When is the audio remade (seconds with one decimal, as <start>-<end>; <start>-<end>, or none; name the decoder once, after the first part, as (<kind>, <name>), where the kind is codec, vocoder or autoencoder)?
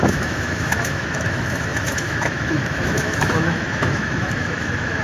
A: 0.0-5.0 (autoencoder, DAC-VAE)